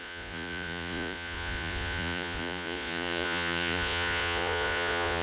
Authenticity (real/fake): fake